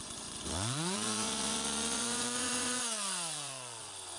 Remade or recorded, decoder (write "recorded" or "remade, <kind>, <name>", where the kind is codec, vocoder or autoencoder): remade, vocoder, Vocos